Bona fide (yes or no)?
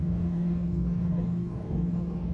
no